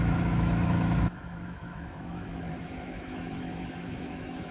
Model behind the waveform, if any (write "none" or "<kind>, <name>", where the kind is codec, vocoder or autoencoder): autoencoder, DAC-VAE